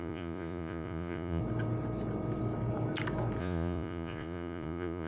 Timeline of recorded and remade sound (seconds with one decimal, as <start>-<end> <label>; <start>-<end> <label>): 0.0-1.4 remade; 1.4-3.4 recorded; 3.4-5.1 remade